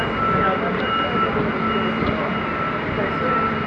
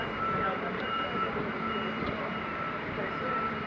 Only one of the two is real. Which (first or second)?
first